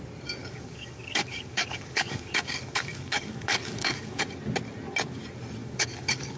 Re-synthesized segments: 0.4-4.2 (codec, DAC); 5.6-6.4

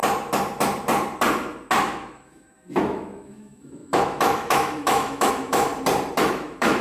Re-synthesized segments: 1.8-5.7 (autoencoder, DAC-VAE); 6.2-6.8